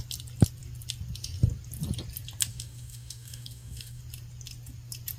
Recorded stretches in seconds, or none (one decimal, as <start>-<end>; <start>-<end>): 0.0-2.5; 4.0-5.2